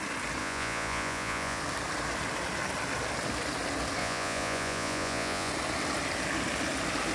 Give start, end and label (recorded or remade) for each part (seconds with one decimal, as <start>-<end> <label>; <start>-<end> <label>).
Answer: 0.0-0.4 recorded; 0.4-1.6 remade; 1.6-4.0 recorded; 4.0-5.5 remade; 5.5-7.1 recorded